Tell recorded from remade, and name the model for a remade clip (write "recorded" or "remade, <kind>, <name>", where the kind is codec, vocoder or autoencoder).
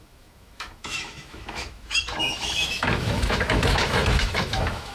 remade, autoencoder, DAC-VAE